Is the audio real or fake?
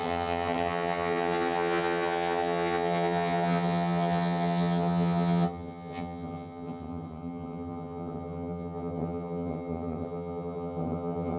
fake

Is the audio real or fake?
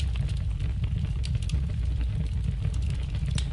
real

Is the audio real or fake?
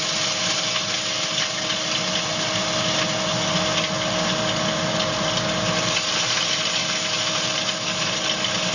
real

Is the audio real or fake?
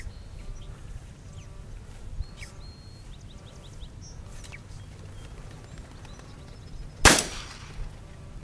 real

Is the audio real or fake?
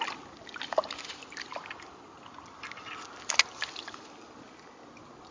real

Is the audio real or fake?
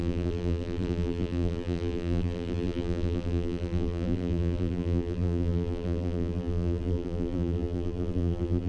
fake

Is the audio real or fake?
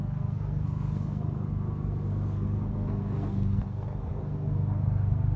fake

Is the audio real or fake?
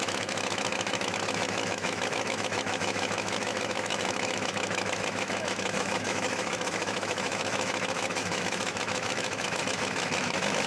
fake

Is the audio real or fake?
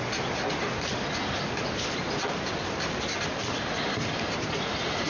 real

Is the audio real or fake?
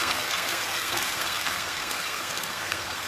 fake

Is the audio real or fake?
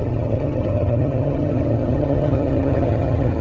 fake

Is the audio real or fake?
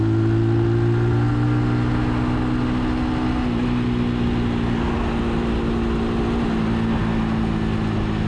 real